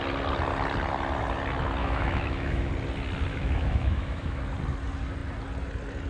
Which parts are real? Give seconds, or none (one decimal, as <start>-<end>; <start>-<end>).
0.0-1.8; 2.7-3.3; 4.4-6.1